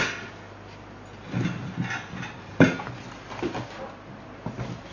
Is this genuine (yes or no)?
yes